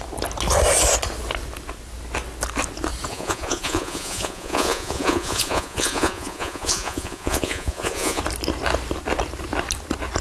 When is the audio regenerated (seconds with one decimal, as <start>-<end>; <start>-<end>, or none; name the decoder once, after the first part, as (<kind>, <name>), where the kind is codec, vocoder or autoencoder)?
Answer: 3.1-8.2 (vocoder, Vocos)